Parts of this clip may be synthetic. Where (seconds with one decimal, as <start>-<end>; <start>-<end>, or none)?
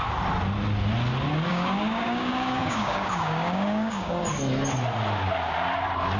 1.5-4.2